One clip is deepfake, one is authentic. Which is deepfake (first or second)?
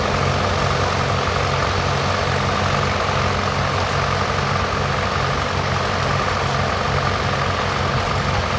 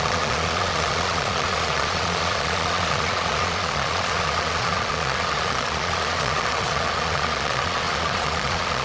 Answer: second